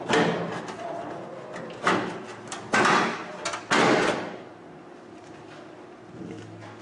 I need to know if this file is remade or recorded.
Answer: recorded